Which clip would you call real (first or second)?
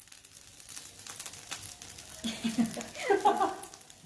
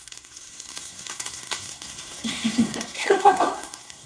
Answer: first